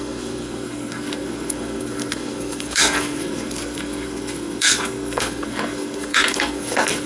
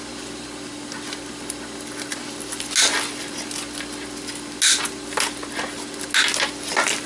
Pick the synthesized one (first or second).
first